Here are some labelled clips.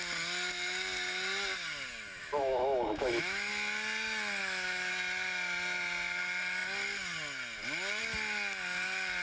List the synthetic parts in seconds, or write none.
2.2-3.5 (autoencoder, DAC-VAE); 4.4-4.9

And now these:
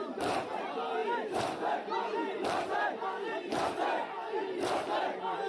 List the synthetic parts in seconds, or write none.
none

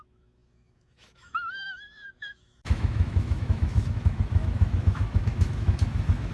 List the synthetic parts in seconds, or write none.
0.0-6.3 (autoencoder, DAC-VAE)

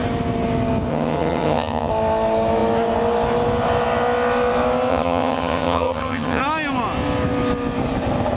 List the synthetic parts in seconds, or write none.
0.9-1.9 (vocoder, HiFi-GAN); 4.9-6.4